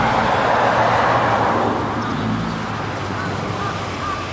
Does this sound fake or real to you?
real